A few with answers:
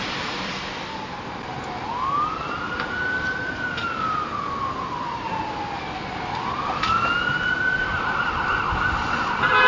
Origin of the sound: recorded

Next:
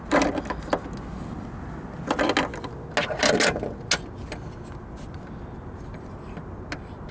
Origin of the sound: recorded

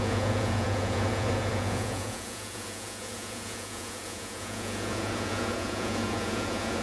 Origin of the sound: remade